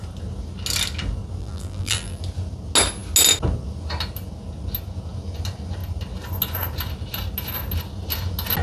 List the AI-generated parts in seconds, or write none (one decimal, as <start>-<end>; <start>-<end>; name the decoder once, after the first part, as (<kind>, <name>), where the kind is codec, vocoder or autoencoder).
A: 1.4-2.2 (vocoder, BigVGAN v2)